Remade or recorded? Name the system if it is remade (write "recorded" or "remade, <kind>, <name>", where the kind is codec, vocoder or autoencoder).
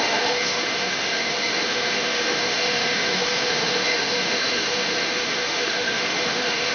remade, autoencoder, DAC-VAE